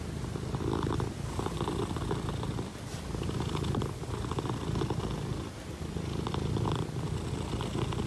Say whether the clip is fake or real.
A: real